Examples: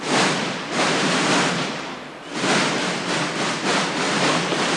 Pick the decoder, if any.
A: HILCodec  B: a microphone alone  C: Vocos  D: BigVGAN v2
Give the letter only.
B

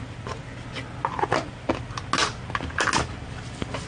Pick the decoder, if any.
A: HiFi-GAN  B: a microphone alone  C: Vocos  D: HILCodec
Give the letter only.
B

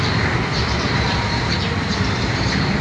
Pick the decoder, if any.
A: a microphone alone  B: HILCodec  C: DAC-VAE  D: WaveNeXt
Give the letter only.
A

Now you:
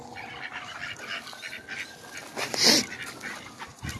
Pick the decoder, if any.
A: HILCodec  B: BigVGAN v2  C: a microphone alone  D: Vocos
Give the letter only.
C